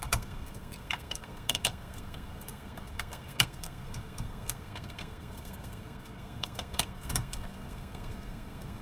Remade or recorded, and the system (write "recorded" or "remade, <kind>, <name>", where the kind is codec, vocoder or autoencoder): remade, codec, SNAC